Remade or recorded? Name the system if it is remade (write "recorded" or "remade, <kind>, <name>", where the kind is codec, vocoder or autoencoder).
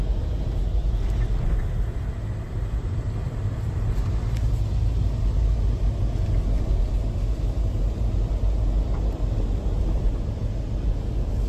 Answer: recorded